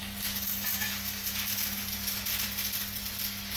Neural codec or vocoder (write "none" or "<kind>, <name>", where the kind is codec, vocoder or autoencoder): none